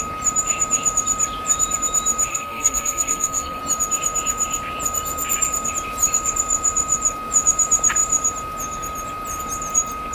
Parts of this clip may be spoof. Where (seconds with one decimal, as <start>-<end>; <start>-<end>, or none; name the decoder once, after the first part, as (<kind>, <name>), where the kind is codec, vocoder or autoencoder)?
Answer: 2.3-3.6 (codec, SNAC)